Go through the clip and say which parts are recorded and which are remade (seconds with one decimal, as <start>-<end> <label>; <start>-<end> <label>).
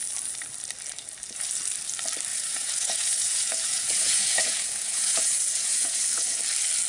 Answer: 0.0-2.3 recorded; 2.3-6.4 remade; 6.4-6.9 recorded